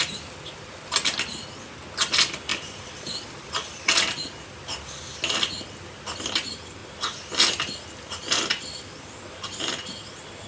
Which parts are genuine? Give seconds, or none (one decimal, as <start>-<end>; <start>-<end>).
0.0-2.5; 3.9-10.5